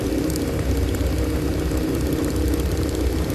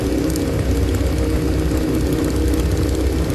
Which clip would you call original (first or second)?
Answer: second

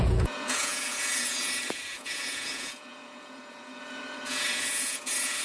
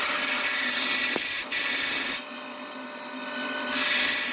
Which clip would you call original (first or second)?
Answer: second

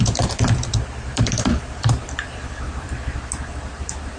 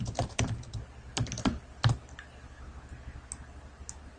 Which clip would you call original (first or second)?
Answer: second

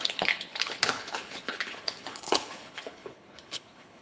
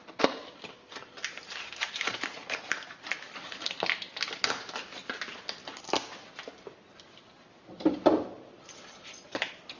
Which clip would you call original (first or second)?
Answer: second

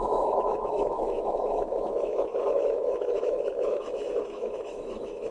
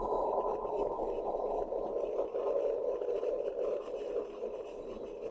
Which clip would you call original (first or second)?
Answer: second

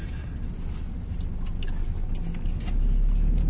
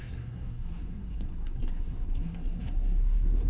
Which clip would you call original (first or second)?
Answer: first